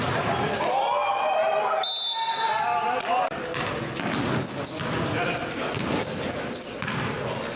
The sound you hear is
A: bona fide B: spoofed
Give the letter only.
A